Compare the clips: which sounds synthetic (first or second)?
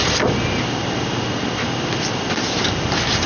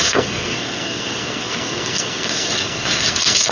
second